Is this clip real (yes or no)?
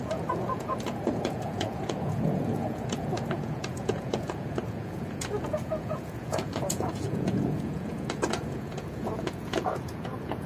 no